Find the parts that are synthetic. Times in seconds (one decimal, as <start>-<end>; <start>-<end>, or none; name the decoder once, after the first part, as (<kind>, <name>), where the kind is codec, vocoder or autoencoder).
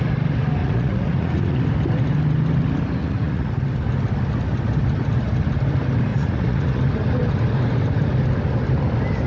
0.6-1.6 (vocoder, Vocos); 3.0-3.6; 6.1-6.8